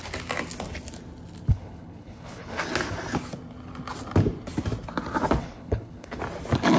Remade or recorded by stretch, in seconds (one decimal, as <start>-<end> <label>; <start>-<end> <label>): 0.0-1.5 recorded; 1.5-2.6 remade; 2.6-5.4 recorded; 5.4-6.2 remade; 6.2-6.8 recorded